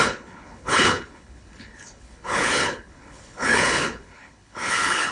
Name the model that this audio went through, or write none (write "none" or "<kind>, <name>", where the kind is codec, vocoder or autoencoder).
codec, HILCodec